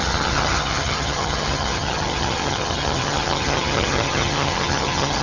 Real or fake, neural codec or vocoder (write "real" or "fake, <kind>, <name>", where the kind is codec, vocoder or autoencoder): fake, vocoder, HiFi-GAN